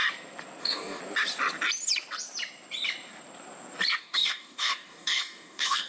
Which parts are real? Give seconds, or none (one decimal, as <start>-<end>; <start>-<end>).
0.0-0.6; 1.0-4.0